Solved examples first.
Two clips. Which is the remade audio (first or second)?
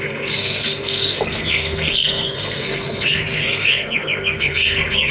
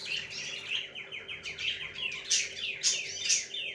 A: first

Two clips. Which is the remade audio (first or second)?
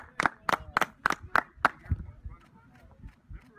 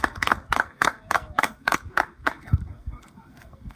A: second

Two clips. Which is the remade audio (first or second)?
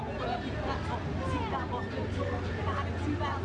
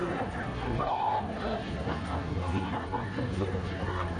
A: second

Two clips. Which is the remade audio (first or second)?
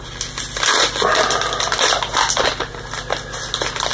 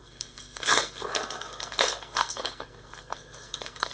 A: second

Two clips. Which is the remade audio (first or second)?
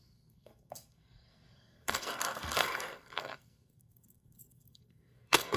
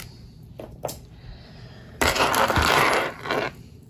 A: first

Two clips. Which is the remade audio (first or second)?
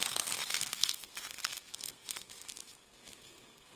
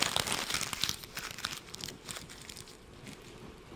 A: first